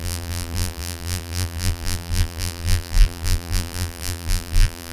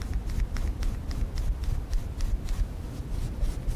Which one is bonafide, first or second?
second